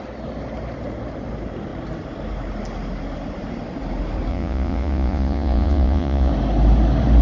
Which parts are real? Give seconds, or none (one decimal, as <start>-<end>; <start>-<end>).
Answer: 0.0-4.3; 6.3-7.2